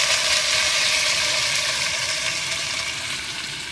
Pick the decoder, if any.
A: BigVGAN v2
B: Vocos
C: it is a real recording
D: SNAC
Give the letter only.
A